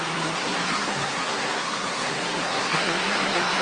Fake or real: fake